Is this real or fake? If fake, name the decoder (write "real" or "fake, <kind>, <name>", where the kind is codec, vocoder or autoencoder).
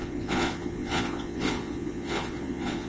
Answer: fake, vocoder, Vocos